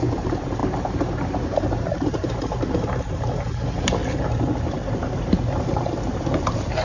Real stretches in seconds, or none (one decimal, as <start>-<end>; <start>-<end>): 4.0-4.7